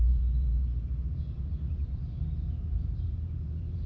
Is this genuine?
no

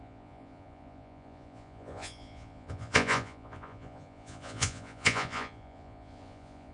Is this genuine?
no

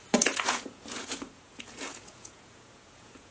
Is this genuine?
no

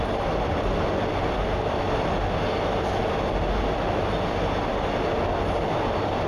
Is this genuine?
yes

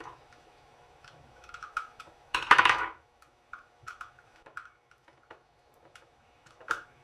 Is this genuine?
no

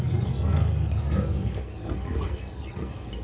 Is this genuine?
no